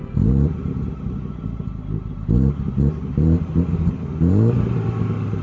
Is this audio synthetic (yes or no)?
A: yes